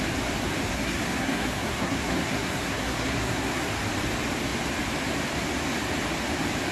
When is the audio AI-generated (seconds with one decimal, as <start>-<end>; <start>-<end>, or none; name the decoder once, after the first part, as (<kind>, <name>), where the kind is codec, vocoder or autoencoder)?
0.7-3.7 (codec, SNAC)